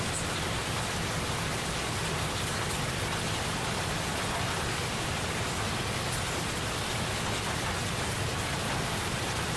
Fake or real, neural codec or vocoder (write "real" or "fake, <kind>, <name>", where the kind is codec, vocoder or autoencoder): real